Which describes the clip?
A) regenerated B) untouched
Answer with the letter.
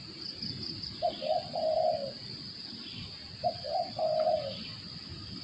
A